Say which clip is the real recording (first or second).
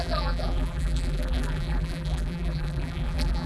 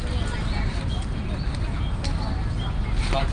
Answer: second